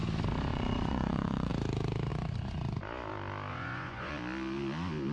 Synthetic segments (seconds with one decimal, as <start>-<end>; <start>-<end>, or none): 0.5-1.5; 3.5-4.1